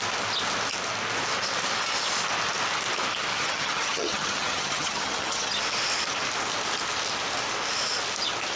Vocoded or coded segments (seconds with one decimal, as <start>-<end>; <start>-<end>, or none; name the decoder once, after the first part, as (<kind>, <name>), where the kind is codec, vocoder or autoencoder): 3.3-5.6 (vocoder, HiFi-GAN)